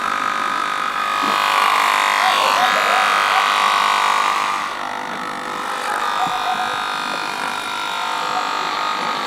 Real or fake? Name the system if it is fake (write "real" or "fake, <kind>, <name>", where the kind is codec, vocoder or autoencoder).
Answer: real